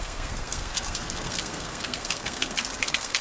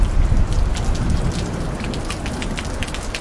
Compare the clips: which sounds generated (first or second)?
first